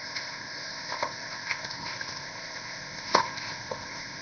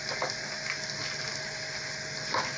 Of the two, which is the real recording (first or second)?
second